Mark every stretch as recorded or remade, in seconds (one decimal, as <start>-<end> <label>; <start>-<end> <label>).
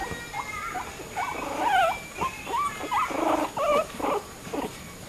0.0-3.7 recorded; 3.7-5.1 remade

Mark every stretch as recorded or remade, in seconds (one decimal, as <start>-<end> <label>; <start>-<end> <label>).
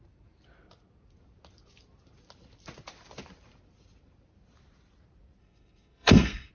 0.0-5.4 recorded; 5.4-6.5 remade